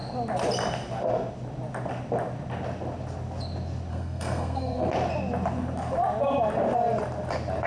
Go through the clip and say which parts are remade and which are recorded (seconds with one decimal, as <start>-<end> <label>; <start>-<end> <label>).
0.0-3.9 recorded; 3.9-4.9 remade; 4.9-7.7 recorded